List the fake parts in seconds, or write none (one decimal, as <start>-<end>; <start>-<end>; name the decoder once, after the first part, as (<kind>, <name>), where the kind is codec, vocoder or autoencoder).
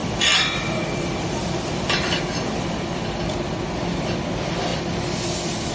0.0-2.2 (vocoder, BigVGAN v2)